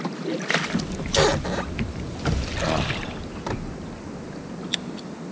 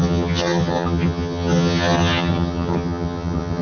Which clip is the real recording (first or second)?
first